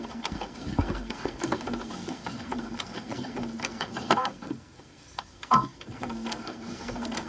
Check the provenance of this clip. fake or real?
fake